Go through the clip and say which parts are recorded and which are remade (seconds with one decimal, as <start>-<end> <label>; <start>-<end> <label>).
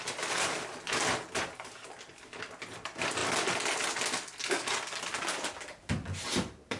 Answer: 0.0-4.4 recorded; 4.4-5.0 remade; 5.0-6.8 recorded